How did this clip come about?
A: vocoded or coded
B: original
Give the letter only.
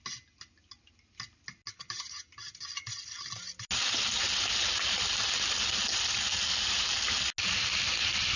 B